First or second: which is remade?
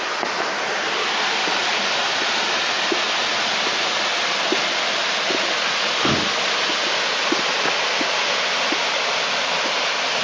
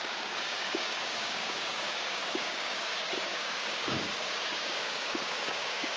second